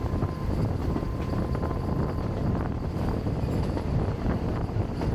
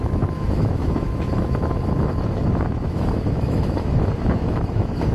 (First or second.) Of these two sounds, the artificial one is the second